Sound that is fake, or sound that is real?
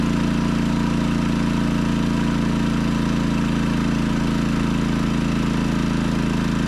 real